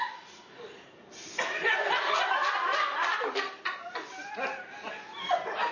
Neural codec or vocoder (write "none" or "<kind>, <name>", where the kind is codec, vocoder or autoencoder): vocoder, BigVGAN v2